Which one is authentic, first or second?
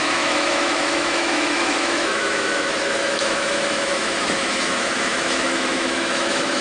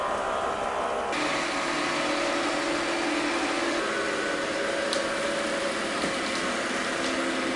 second